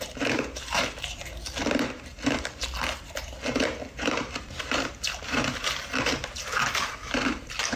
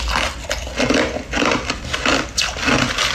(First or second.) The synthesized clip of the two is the first